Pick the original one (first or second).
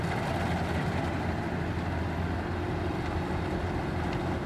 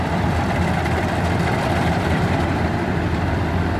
first